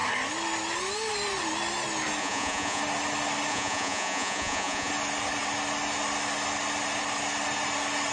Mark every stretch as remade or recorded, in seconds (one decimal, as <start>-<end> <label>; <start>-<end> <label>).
0.0-2.2 recorded; 2.2-2.8 remade; 2.8-3.5 recorded; 3.5-4.9 remade; 4.9-8.1 recorded